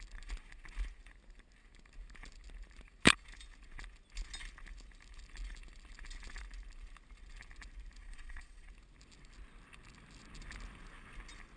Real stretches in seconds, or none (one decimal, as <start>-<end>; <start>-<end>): 0.0-8.0; 8.7-11.6